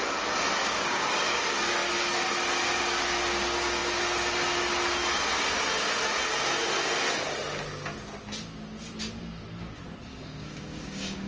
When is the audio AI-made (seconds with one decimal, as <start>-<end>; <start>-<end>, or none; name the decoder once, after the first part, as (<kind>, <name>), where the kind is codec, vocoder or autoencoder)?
0.6-1.4 (codec, DAC); 10.1-11.3